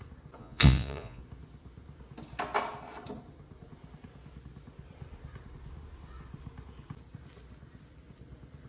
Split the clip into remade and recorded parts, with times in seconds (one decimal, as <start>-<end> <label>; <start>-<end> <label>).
0.0-0.4 recorded; 0.4-1.2 remade; 1.2-8.7 recorded